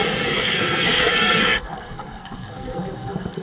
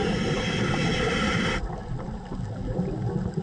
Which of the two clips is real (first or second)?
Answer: second